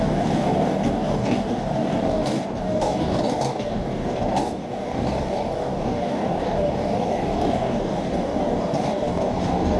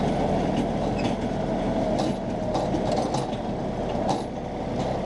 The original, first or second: second